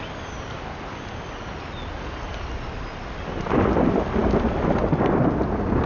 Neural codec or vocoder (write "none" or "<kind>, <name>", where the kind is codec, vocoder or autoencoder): none